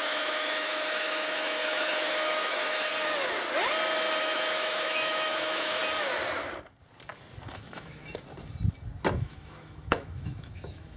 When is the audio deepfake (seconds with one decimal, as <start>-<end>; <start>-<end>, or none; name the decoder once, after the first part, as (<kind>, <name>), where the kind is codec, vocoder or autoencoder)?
0.0-2.9 (autoencoder, DAC-VAE); 4.2-5.8; 7.5-8.0; 9.2-11.0